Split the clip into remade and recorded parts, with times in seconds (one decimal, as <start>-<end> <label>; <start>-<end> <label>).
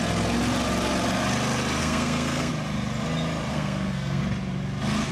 0.0-1.8 recorded; 1.8-2.5 remade; 2.5-3.5 recorded; 3.5-4.2 remade; 4.2-5.1 recorded